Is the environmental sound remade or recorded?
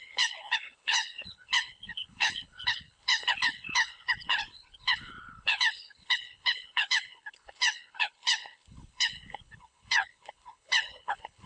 remade